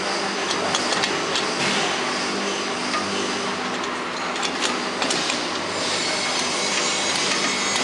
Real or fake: real